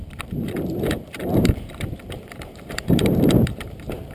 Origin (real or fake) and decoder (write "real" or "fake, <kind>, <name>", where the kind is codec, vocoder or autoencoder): fake, vocoder, BigVGAN v2